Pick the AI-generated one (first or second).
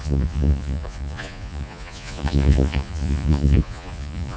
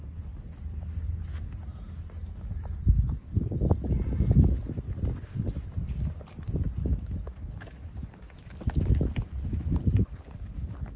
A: first